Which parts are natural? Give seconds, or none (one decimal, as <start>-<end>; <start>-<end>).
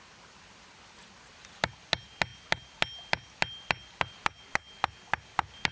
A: 0.0-5.7